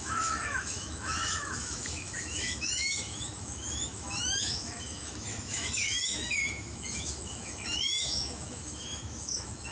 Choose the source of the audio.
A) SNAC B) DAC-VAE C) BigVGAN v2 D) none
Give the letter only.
B